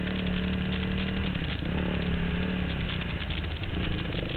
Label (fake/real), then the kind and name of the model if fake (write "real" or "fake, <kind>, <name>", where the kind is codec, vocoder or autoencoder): real